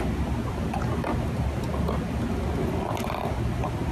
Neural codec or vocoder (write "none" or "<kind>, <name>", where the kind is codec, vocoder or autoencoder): none